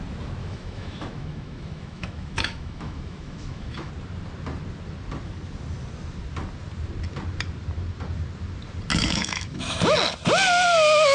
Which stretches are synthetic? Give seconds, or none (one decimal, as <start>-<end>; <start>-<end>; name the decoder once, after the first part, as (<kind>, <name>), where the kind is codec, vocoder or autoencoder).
0.4-3.9 (autoencoder, DAC-VAE); 8.9-9.8